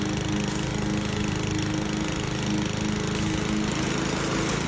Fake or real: real